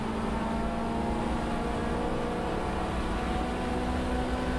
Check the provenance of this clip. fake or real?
real